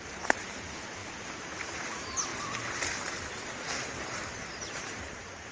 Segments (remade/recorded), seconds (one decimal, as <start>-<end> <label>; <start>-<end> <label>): 0.0-2.3 remade; 2.3-4.0 recorded; 4.0-5.5 remade